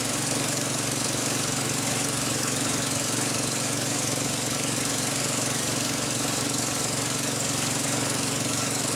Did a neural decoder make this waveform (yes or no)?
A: yes